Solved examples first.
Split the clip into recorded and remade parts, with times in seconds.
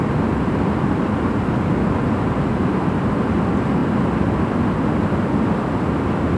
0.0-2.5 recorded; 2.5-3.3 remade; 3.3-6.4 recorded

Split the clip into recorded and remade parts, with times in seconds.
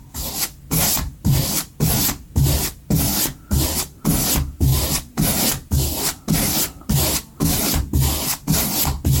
0.0-4.7 recorded; 4.7-7.9 remade; 7.9-9.2 recorded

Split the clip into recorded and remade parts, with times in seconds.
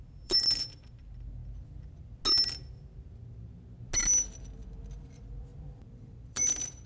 0.0-1.4 remade; 1.4-4.2 recorded; 4.2-6.9 remade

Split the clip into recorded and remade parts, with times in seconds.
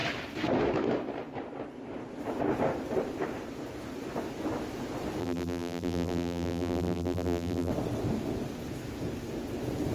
0.0-5.2 recorded; 5.2-7.7 remade; 7.7-9.9 recorded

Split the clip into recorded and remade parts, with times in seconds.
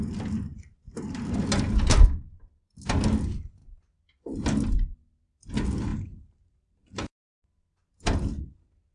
0.0-0.5 recorded; 0.5-1.4 remade; 1.4-5.9 recorded; 5.9-8.4 remade; 8.4-8.9 recorded